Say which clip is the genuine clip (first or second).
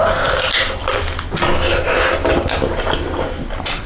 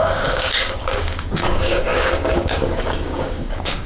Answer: first